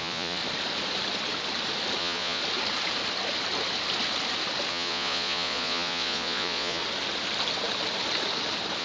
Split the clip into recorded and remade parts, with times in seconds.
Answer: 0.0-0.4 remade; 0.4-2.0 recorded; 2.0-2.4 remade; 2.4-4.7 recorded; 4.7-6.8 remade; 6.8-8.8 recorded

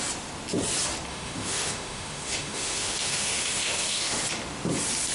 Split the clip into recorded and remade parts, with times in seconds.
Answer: 0.0-1.1 recorded; 1.1-4.2 remade; 4.2-5.1 recorded

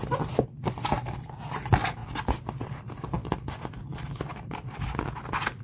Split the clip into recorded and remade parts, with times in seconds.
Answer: 0.0-5.6 recorded

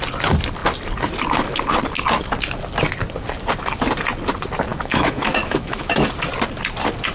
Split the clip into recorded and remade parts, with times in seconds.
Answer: 0.0-4.7 recorded; 4.7-6.1 remade; 6.1-7.1 recorded

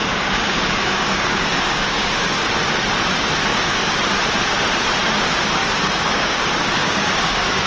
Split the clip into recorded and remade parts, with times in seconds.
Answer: 0.0-2.5 remade; 2.5-3.5 recorded; 3.5-4.0 remade; 4.0-5.6 recorded; 5.6-7.7 remade

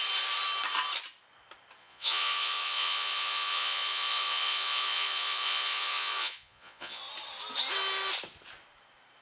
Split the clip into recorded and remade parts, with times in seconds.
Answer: 0.0-1.8 recorded; 1.8-7.0 remade; 7.0-9.2 recorded

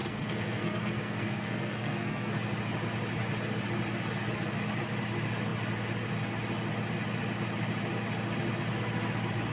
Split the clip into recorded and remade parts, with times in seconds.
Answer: 0.0-2.3 remade; 2.3-9.5 recorded